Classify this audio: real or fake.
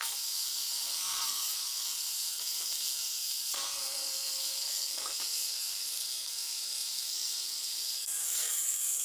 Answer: fake